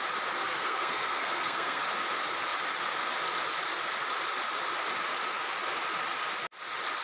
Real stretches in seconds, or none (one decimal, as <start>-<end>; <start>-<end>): 0.0-0.4; 1.8-7.0